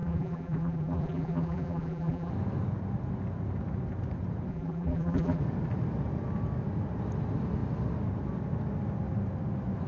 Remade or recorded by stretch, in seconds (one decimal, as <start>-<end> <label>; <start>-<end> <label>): 0.0-2.3 remade; 2.3-4.5 recorded; 4.5-5.4 remade; 5.4-9.9 recorded